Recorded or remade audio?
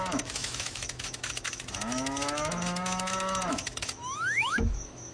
remade